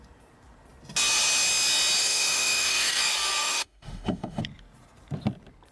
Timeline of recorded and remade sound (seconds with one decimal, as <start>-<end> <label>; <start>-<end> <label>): 0.0-2.0 recorded; 2.0-3.0 remade; 3.0-3.4 recorded; 3.4-4.4 remade; 4.4-5.7 recorded